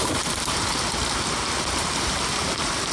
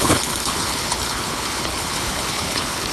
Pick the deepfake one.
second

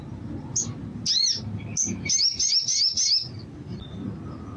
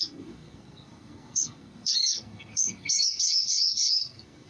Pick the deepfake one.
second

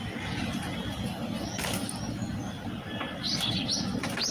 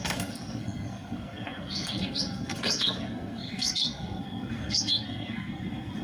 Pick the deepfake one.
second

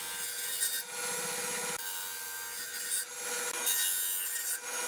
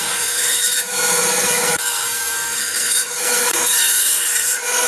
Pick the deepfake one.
second